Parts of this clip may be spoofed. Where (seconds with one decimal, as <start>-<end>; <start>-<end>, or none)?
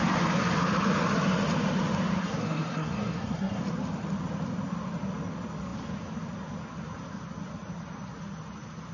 2.2-3.6